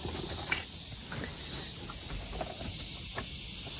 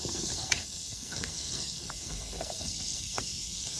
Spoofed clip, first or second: second